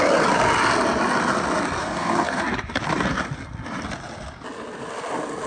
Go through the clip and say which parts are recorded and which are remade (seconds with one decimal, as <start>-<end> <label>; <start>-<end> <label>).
0.0-1.8 recorded; 1.8-2.4 remade; 2.4-5.5 recorded